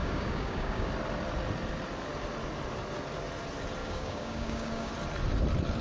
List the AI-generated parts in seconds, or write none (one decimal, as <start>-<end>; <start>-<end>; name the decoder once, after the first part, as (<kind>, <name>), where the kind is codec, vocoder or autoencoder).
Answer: 0.0-0.9 (codec, DAC); 3.8-4.9